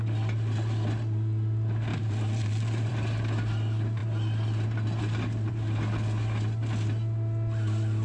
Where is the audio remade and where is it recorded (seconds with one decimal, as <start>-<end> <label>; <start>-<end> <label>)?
0.0-1.9 recorded; 1.9-2.9 remade; 2.9-8.0 recorded

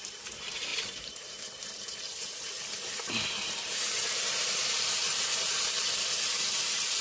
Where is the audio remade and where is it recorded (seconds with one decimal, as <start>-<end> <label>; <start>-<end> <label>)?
0.0-7.0 remade

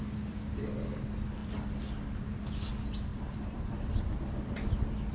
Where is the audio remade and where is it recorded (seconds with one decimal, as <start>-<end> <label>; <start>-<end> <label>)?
0.0-3.1 recorded; 3.1-4.2 remade; 4.2-5.1 recorded

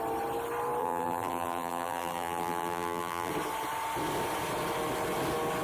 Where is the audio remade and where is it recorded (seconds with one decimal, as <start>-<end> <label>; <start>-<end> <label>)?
0.0-0.8 recorded; 0.8-3.3 remade; 3.3-5.6 recorded

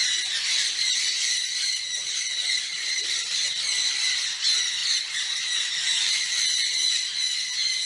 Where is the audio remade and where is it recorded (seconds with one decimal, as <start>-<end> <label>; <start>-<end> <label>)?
0.0-3.3 remade; 3.3-4.8 recorded; 4.8-6.4 remade; 6.4-7.9 recorded

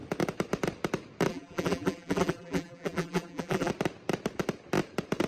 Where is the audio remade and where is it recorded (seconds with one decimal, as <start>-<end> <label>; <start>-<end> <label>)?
0.0-1.3 recorded; 1.3-3.7 remade; 3.7-5.3 recorded

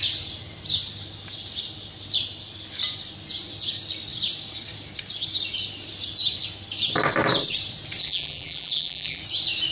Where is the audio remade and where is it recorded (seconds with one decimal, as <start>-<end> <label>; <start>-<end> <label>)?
0.0-8.0 recorded; 8.0-9.2 remade; 9.2-9.7 recorded